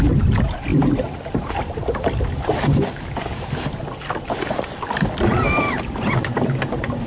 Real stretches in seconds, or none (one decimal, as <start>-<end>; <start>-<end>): 0.0-0.7; 1.5-5.4